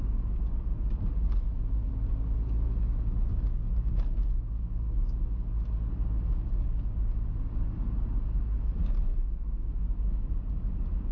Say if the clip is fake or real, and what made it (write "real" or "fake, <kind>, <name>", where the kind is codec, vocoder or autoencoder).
real